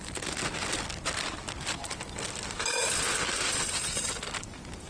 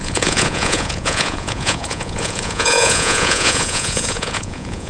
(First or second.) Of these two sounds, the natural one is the first